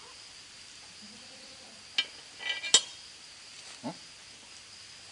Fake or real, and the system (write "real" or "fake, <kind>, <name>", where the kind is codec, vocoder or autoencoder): real